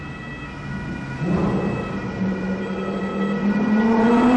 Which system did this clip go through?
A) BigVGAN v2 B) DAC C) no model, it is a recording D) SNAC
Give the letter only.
C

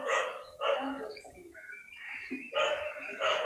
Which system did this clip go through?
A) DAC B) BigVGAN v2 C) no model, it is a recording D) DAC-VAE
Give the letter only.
A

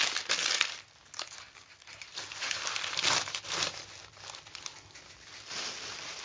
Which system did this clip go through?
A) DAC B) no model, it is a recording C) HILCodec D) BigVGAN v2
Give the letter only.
B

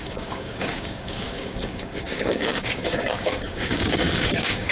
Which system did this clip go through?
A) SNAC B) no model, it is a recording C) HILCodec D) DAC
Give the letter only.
D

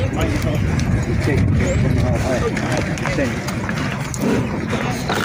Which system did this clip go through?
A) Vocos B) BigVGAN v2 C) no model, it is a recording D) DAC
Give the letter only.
C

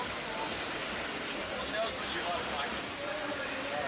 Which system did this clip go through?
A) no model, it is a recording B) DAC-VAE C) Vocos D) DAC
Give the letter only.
A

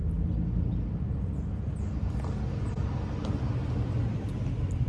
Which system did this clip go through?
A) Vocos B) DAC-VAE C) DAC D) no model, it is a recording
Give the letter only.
D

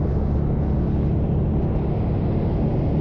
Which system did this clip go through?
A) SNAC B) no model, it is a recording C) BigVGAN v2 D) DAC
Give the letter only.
B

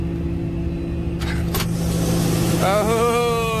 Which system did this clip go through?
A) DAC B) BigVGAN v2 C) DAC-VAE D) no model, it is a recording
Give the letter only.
D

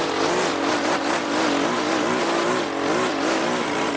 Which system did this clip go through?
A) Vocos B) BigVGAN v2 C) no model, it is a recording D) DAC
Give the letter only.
C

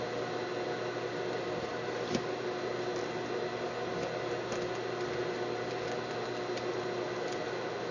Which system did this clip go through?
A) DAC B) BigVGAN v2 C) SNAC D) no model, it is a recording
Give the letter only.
D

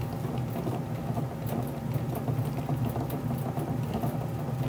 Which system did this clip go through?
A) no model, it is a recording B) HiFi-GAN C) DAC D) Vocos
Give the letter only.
A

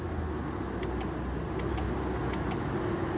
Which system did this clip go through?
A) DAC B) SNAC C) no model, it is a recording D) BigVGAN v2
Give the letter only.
C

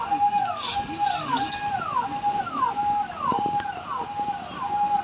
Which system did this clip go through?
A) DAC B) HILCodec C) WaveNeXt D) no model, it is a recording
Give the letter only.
D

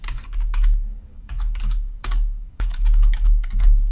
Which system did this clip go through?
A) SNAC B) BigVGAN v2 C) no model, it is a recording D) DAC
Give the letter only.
D